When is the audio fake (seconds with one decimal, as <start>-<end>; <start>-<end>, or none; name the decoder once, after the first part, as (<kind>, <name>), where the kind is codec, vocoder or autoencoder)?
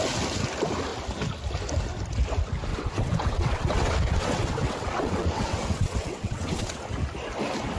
2.7-6.8 (vocoder, WaveNeXt)